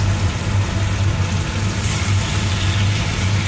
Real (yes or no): yes